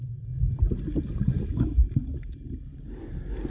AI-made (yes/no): no